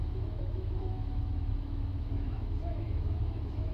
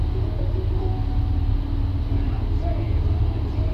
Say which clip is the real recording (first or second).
second